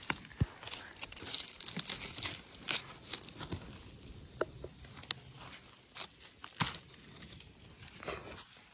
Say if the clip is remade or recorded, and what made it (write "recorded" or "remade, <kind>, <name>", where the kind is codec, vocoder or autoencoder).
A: recorded